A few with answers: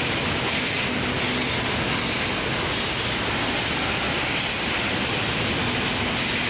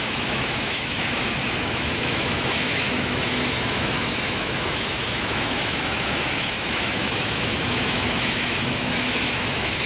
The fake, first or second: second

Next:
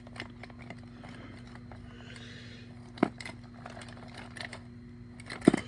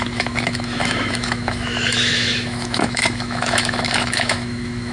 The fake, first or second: second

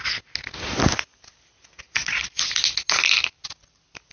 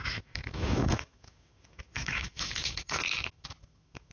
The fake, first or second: second